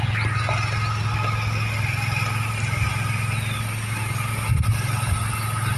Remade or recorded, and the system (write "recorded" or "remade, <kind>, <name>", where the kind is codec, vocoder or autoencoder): recorded